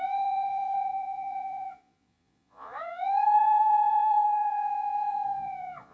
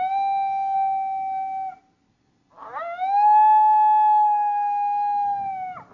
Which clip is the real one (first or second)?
second